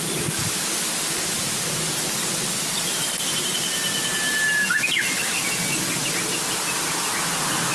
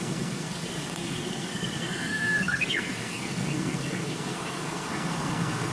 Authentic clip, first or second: first